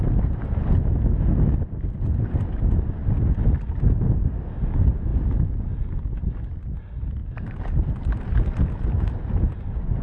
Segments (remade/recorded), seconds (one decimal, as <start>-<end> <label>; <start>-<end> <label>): 0.0-10.0 recorded